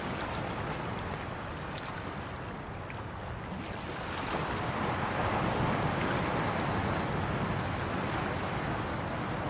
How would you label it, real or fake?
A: real